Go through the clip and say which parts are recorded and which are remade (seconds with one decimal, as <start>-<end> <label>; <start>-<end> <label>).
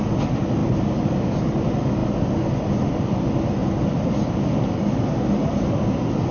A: 0.0-6.3 recorded